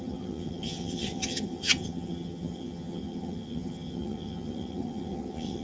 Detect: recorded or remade remade